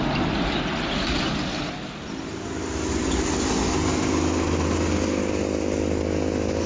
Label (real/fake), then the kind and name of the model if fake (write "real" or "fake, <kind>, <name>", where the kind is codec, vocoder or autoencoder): real